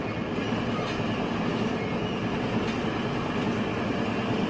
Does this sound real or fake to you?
real